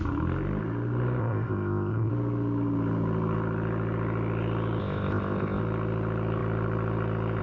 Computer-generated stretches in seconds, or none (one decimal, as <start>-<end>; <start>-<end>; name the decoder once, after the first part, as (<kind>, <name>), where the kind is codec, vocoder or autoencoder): 1.2-2.1 (codec, ZipCodec); 4.8-5.6